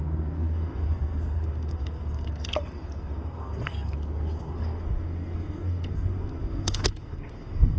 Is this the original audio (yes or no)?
no